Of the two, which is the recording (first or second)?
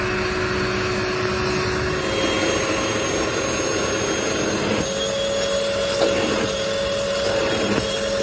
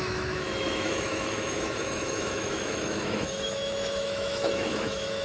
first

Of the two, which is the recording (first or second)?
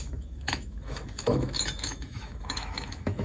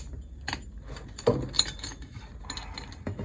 second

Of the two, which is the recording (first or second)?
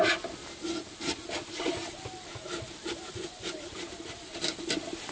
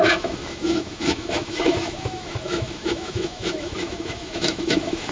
first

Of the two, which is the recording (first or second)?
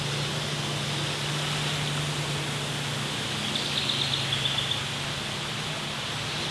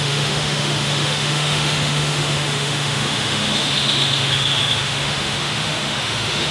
first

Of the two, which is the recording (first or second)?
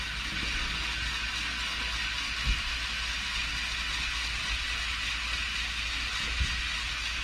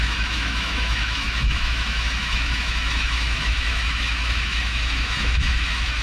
first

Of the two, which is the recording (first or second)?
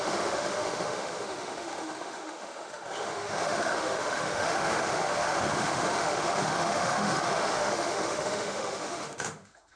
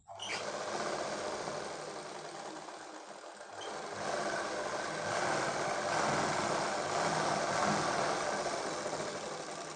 second